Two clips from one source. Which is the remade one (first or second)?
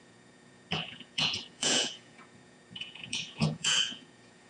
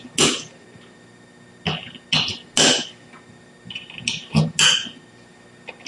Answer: first